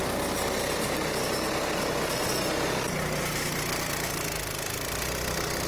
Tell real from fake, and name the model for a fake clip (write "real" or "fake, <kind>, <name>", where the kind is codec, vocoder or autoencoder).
real